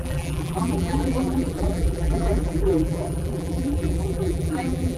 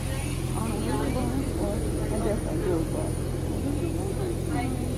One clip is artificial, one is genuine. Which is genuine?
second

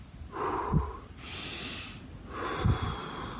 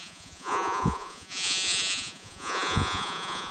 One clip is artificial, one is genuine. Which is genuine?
first